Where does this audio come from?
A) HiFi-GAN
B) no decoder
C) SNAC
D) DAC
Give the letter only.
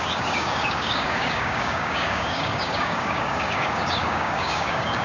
D